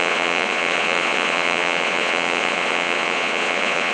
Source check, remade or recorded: remade